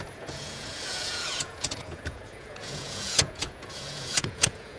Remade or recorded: remade